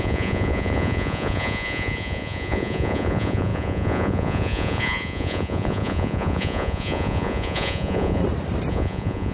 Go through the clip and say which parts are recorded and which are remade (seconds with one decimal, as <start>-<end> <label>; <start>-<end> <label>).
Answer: 0.0-8.2 remade; 8.2-8.7 recorded; 8.7-9.3 remade